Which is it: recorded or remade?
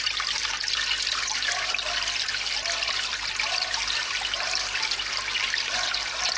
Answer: recorded